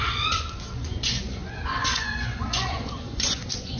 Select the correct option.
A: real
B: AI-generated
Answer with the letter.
B